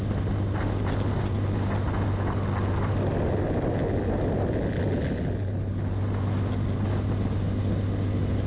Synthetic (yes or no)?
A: no